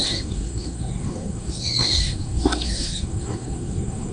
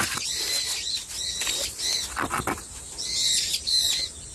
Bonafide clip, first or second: second